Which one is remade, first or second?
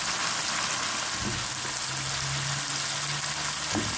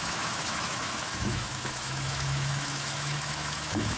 second